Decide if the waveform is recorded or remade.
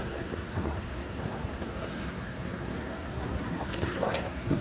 remade